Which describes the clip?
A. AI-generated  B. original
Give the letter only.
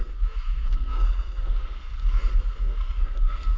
A